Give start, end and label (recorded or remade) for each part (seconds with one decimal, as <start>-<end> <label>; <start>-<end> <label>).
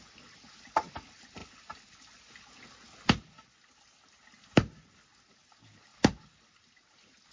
0.0-7.3 recorded